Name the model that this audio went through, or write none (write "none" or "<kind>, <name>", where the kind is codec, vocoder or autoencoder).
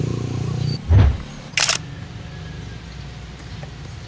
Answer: none